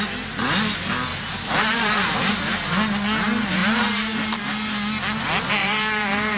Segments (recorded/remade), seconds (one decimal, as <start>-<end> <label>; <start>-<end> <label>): 0.0-1.1 recorded; 1.1-2.4 remade; 2.4-3.6 recorded; 3.6-4.4 remade; 4.4-5.6 recorded; 5.6-6.4 remade

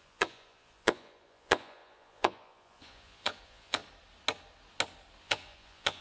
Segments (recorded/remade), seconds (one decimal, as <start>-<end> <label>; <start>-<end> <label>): 0.0-3.8 remade; 3.8-5.2 recorded; 5.2-6.0 remade

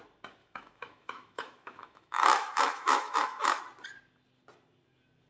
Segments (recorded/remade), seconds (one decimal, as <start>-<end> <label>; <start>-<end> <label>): 0.0-0.4 recorded; 0.4-3.6 remade; 3.6-5.3 recorded

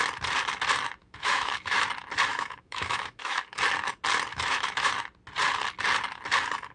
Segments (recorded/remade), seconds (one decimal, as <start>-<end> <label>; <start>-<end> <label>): 0.0-1.0 recorded; 1.0-1.9 remade; 1.9-2.3 recorded; 2.3-3.6 remade; 3.6-4.3 recorded; 4.3-4.9 remade; 4.9-6.7 recorded

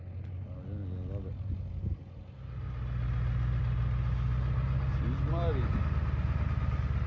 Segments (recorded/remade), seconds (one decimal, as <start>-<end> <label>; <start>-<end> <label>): 0.0-7.1 recorded